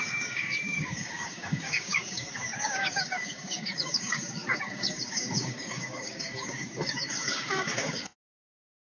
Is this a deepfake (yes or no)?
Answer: yes